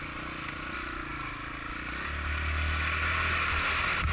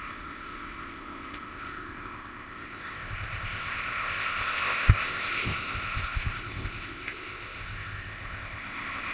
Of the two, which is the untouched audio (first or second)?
first